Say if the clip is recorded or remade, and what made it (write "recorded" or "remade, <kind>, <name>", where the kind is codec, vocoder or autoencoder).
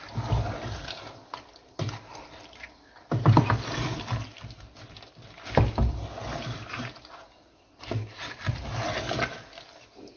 recorded